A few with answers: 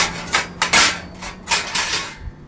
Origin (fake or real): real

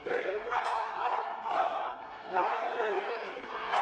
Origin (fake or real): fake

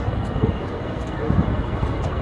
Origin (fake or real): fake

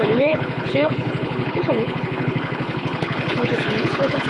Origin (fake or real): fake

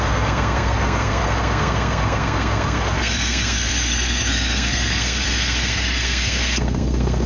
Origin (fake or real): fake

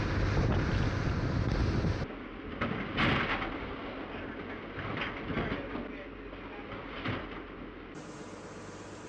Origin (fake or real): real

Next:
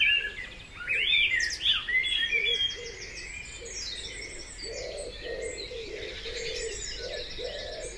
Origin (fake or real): real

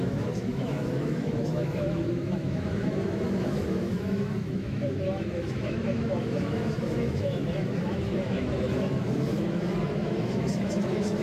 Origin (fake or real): fake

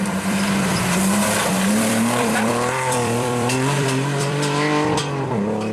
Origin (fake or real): fake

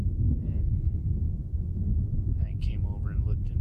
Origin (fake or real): real